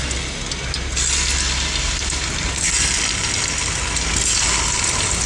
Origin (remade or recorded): recorded